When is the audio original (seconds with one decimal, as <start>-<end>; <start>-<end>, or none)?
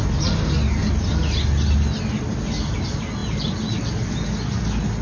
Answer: 0.0-5.0